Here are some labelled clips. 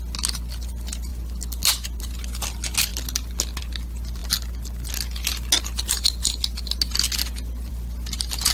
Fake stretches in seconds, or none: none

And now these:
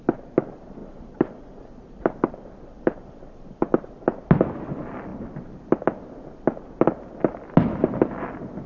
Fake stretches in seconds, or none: 0.8-3.1

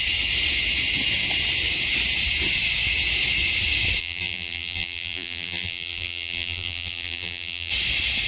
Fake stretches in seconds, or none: 4.0-7.7

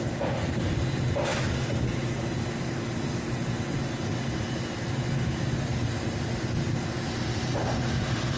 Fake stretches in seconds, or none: none

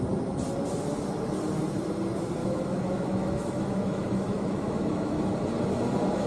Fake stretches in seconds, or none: 2.4-5.2

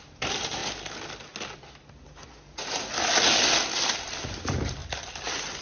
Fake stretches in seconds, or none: 0.0-0.6; 4.0-4.8

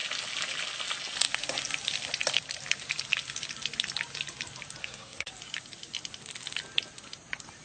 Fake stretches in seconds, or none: 4.8-5.3